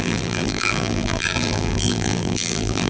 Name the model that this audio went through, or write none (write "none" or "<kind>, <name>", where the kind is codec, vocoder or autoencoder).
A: vocoder, BigVGAN v2